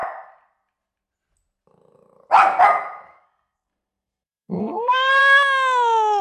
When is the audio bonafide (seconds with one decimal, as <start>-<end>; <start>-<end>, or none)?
0.0-3.1; 5.2-6.2